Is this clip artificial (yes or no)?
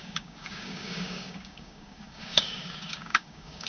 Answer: yes